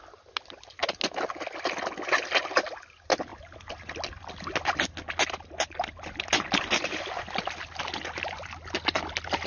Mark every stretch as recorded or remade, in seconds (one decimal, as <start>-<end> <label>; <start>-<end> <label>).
0.0-9.5 recorded